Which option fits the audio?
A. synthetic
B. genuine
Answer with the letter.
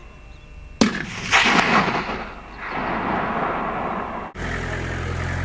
B